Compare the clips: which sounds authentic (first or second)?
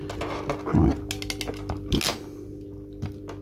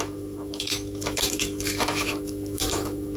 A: first